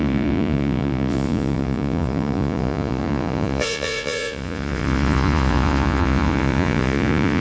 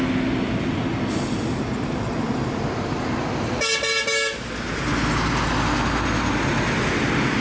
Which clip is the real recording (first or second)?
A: second